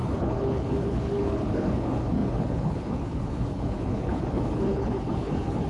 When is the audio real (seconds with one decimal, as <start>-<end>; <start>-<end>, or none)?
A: none